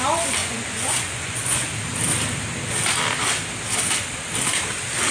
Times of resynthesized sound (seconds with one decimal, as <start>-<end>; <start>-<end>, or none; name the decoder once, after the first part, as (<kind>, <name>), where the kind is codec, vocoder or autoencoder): 0.4-1.7 (vocoder, Vocos)